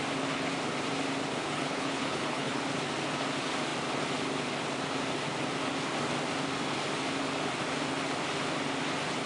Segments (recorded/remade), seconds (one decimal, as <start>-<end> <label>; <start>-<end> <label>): 0.0-1.4 recorded; 1.4-2.6 remade; 2.6-9.3 recorded